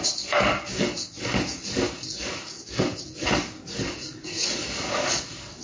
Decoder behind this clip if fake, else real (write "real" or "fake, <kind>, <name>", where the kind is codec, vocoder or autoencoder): fake, codec, DAC